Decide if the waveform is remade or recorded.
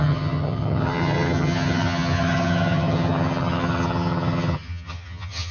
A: remade